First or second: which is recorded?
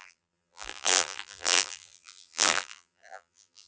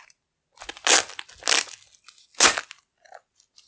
second